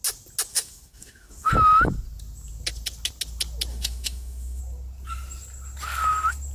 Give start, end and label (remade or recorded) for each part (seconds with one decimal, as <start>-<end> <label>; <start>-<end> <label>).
0.0-0.5 recorded; 0.5-1.5 remade; 1.5-3.7 recorded; 3.7-4.6 remade; 4.6-6.5 recorded